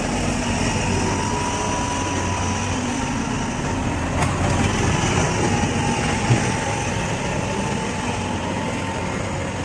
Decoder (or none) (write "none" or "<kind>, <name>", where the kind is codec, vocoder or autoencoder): none